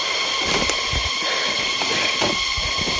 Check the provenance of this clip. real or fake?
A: real